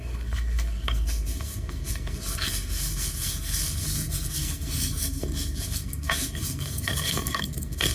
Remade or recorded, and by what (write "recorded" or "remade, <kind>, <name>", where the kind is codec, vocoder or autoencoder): remade, codec, SNAC